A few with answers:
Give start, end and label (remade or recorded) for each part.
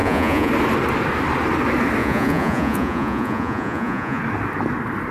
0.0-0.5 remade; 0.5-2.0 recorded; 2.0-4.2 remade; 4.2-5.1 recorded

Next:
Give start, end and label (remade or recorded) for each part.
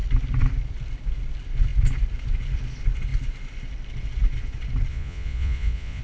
0.0-4.9 recorded; 4.9-6.0 remade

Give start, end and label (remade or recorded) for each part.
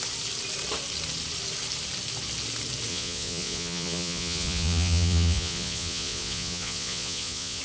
0.0-2.9 recorded; 2.9-7.6 remade